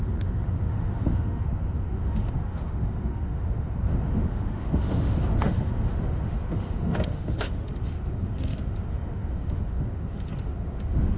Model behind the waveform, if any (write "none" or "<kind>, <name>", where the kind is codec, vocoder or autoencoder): autoencoder, DAC-VAE